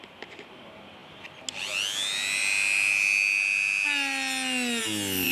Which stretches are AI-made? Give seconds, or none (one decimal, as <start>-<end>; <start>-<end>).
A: none